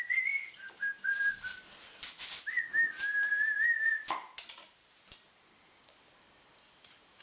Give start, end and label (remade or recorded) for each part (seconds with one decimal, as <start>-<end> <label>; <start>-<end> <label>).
0.0-7.2 recorded